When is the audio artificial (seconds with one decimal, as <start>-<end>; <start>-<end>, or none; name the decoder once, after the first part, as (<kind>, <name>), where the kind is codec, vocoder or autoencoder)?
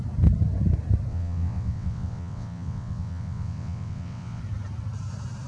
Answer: 1.1-4.4 (vocoder, WaveNeXt)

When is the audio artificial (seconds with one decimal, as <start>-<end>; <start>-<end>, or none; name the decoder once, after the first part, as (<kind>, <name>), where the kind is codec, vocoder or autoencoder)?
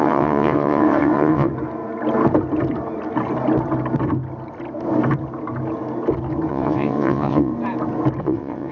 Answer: 0.0-1.5 (vocoder, WaveNeXt); 6.5-7.5; 8.2-8.7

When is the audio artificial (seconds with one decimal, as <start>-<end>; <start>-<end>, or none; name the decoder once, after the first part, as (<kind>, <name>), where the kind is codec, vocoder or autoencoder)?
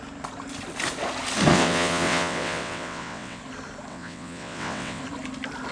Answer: 1.5-3.4 (vocoder, WaveNeXt); 3.9-5.0